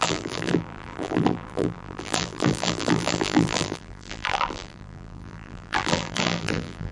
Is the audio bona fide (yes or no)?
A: no